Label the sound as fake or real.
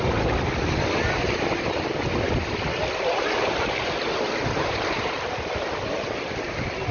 real